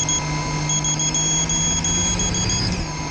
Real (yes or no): yes